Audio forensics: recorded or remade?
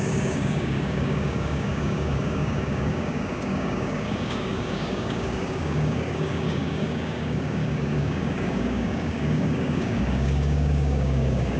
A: remade